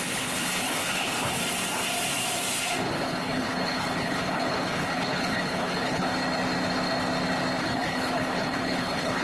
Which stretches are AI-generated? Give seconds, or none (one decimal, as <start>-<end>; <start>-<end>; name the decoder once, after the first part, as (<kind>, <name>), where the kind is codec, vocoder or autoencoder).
0.0-1.4 (codec, HILCodec); 2.9-6.1; 7.6-9.2

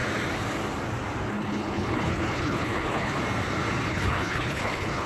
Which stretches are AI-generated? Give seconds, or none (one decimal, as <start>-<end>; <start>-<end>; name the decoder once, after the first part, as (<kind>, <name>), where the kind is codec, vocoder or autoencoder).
1.3-3.2 (codec, HILCodec); 3.9-5.1